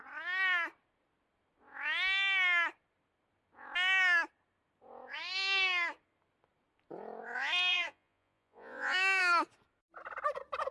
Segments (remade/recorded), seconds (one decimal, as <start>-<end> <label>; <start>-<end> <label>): 0.0-7.7 recorded; 7.7-9.2 remade; 9.2-10.7 recorded